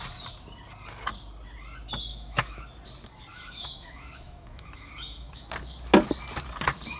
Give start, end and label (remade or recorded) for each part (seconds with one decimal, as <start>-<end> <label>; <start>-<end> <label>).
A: 0.0-2.1 recorded; 2.1-2.6 remade; 2.6-3.3 recorded; 3.3-5.5 remade; 5.5-7.0 recorded